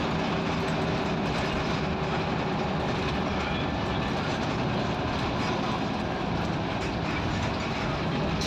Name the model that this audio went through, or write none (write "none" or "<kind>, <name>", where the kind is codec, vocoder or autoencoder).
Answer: none